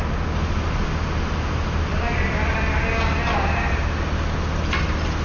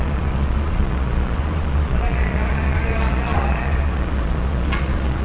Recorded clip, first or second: first